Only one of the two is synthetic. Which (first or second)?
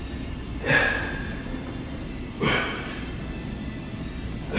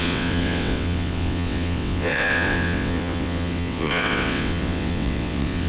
second